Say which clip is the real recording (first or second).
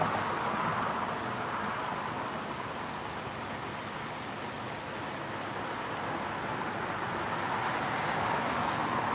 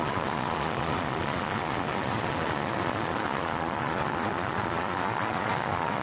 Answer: first